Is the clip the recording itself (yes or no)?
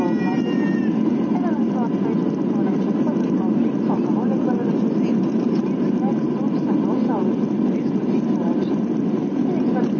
yes